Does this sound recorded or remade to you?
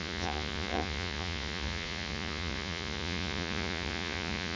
remade